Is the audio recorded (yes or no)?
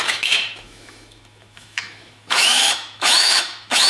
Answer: no